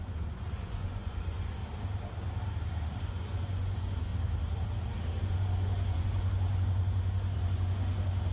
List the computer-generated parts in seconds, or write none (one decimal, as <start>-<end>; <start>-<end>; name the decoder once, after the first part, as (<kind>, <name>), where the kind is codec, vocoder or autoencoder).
0.0-1.6 (vocoder, Vocos); 3.0-4.1; 5.2-8.3